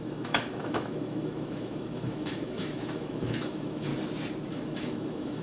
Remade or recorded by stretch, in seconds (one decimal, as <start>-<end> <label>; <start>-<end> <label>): 0.0-3.9 remade; 3.9-4.5 recorded; 4.5-5.4 remade